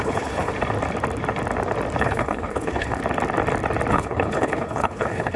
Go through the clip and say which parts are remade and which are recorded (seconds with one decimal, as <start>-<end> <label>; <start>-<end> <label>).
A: 0.0-0.5 remade; 0.5-2.0 recorded; 2.0-3.0 remade; 3.0-3.9 recorded; 3.9-5.4 remade